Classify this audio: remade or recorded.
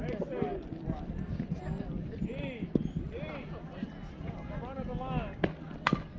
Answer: recorded